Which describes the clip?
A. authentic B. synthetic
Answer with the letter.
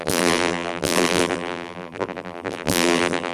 B